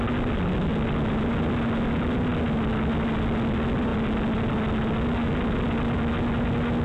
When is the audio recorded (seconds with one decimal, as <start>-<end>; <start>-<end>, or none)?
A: 0.0-6.8